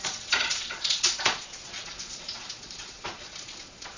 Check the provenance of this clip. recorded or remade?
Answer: remade